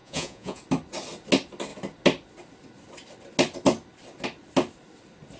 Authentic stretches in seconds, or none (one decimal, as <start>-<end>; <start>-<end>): 0.6-5.4